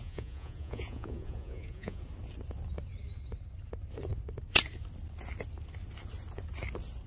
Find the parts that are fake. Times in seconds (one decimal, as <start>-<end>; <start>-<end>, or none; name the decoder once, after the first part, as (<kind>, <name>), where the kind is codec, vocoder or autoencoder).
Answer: 0.0-2.0 (vocoder, Vocos)